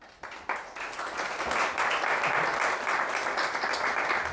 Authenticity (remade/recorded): recorded